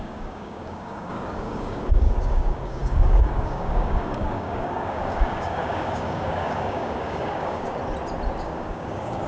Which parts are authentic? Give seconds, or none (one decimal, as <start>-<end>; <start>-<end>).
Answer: 7.8-8.4